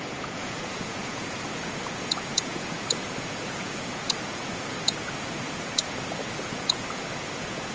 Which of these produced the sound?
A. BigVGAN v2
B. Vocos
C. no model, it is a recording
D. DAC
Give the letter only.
B